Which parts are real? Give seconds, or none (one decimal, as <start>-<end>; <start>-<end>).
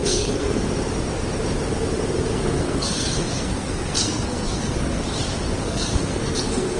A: 0.6-2.3; 5.0-5.6